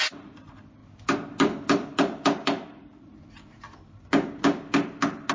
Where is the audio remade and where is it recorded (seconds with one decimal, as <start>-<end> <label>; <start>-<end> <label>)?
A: 0.0-0.8 recorded; 0.8-4.0 remade; 4.0-5.3 recorded